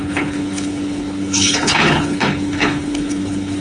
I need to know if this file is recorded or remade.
remade